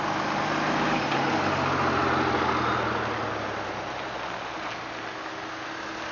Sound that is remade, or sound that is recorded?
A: recorded